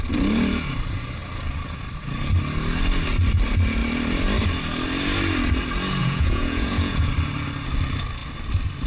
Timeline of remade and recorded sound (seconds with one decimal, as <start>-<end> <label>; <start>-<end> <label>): 0.0-6.0 recorded; 6.0-7.1 remade; 7.1-8.9 recorded